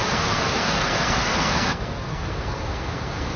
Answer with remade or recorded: remade